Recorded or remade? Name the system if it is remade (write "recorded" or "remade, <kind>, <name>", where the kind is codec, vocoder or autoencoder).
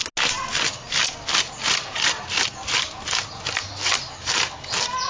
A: recorded